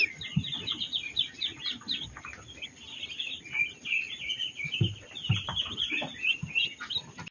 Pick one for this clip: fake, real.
fake